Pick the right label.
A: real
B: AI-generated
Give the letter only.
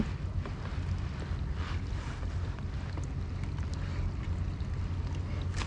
A